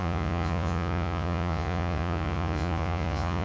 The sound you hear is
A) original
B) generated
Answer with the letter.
B